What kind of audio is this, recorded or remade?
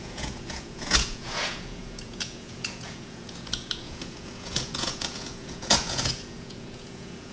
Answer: remade